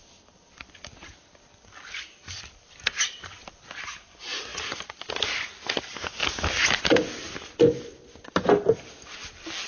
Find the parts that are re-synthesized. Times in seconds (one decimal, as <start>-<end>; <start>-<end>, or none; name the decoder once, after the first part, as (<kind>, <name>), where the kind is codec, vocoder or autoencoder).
none